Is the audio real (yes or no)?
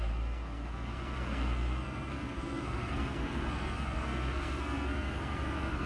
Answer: no